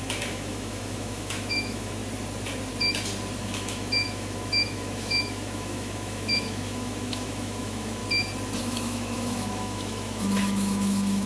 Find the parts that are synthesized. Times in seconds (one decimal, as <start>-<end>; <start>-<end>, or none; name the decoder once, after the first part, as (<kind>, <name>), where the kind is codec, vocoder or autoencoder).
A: 0.0-2.0 (autoencoder, DAC-VAE); 3.4-8.0; 8.6-11.3